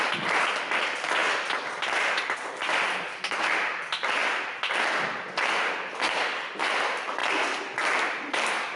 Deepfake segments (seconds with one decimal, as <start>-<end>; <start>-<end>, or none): 0.0-1.2; 1.7-4.2; 6.3-7.2; 8.3-8.8